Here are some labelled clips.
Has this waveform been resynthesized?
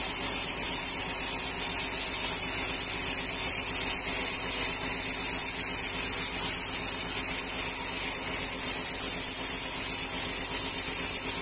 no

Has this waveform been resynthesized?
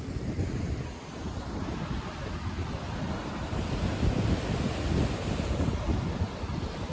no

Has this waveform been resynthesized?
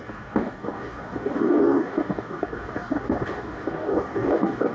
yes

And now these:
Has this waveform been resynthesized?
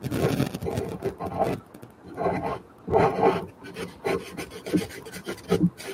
no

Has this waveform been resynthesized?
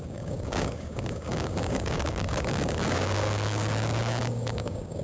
yes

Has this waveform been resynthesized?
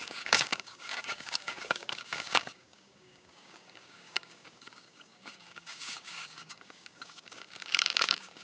yes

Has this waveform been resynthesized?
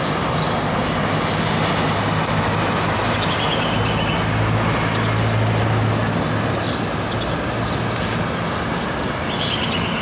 no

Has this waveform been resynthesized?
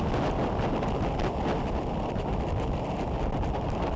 no